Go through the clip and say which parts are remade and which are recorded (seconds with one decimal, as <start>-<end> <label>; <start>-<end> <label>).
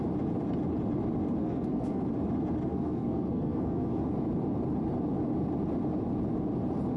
0.0-1.4 recorded; 1.4-2.0 remade; 2.0-2.7 recorded; 2.7-4.0 remade; 4.0-7.0 recorded